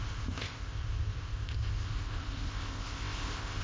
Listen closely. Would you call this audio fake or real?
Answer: fake